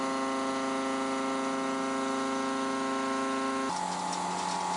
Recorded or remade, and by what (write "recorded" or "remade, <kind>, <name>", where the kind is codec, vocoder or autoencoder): recorded